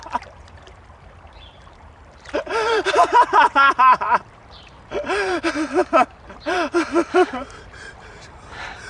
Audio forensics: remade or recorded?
remade